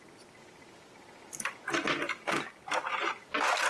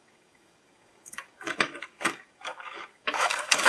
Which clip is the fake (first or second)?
second